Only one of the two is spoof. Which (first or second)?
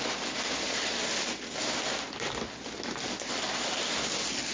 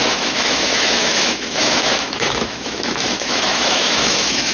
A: second